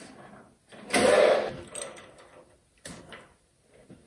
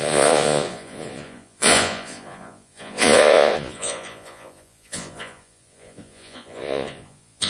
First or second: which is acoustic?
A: first